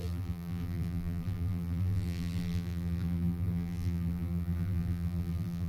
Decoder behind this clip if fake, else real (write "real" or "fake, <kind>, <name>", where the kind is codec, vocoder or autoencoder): fake, vocoder, BigVGAN v2